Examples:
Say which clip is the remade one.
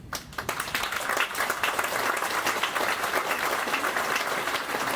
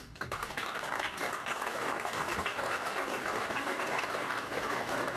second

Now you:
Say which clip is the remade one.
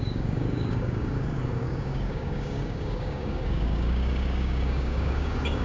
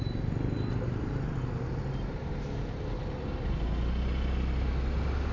first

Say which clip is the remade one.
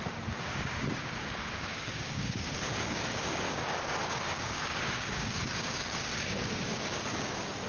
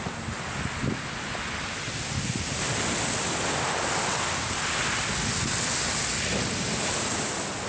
first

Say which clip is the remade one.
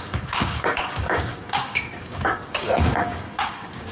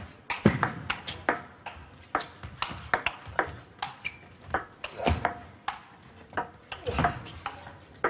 first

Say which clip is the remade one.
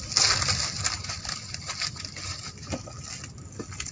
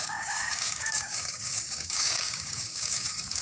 second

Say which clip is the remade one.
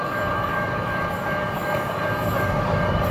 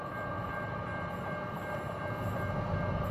first